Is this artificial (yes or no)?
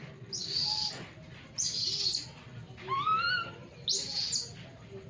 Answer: no